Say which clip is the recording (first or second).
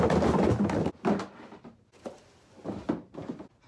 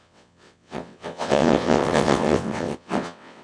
first